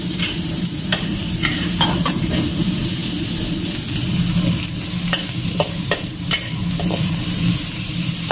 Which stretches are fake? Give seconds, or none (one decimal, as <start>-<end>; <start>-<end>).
0.0-3.0; 5.5-8.3